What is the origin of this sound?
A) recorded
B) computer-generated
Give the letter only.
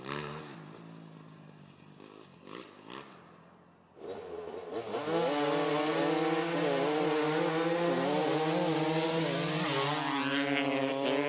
A